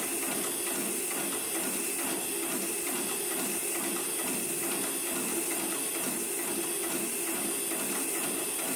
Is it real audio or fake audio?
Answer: real